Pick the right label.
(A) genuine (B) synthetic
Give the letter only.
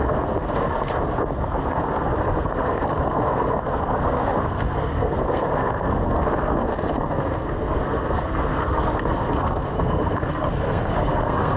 B